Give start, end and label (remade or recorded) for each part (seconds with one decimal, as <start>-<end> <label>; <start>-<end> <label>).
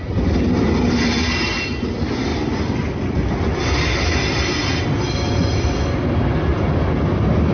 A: 0.0-7.5 recorded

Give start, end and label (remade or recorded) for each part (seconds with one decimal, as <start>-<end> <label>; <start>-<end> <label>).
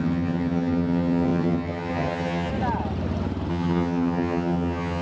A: 0.0-2.5 remade; 2.5-3.5 recorded; 3.5-5.0 remade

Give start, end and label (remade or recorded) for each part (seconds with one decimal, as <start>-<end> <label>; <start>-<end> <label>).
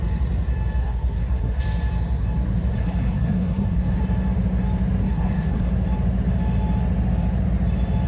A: 0.0-0.8 recorded; 0.8-1.6 remade; 1.6-2.7 recorded; 2.7-4.0 remade; 4.0-5.0 recorded; 5.0-5.7 remade; 5.7-8.1 recorded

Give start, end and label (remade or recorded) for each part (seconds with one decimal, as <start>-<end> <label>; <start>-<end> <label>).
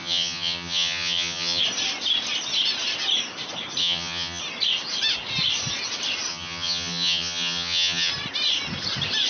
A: 0.0-1.6 remade; 1.6-3.8 recorded; 3.8-4.4 remade; 4.4-6.3 recorded; 6.3-8.1 remade; 8.1-9.3 recorded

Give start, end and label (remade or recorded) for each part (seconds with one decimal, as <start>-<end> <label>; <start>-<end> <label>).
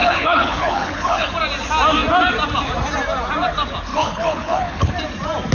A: 0.0-1.3 remade; 1.3-3.9 recorded; 3.9-4.9 remade; 4.9-5.5 recorded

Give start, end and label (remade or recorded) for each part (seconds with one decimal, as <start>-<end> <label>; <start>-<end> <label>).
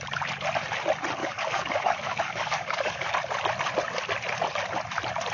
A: 0.0-1.2 recorded; 1.2-3.1 remade; 3.1-5.3 recorded